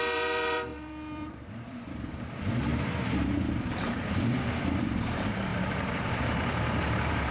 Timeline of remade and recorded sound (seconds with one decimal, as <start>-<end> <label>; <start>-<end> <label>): 0.0-2.7 remade; 2.7-3.5 recorded; 3.5-7.3 remade